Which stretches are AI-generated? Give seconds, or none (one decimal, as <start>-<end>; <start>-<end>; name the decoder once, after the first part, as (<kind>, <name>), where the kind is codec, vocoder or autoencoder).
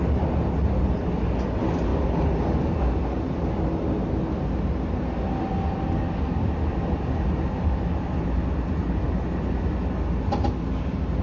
none